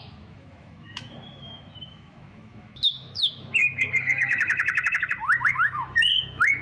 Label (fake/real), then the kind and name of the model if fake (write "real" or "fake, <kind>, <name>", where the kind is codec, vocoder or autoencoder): fake, autoencoder, DAC-VAE